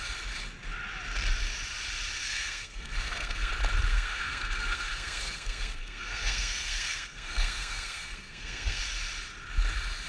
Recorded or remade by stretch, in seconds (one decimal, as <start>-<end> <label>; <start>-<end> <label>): 0.0-2.2 recorded; 2.2-3.5 remade; 3.5-3.9 recorded; 3.9-8.8 remade; 8.8-10.1 recorded